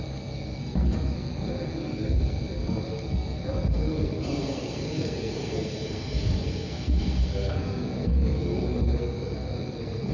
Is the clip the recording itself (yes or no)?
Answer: no